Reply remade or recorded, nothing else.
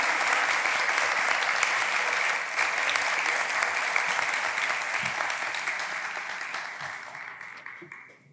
recorded